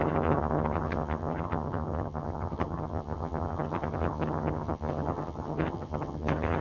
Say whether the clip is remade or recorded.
remade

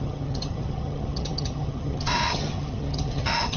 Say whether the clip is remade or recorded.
remade